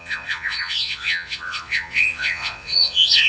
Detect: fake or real fake